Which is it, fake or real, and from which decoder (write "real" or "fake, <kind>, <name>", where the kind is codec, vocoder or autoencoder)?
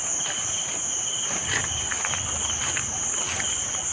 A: real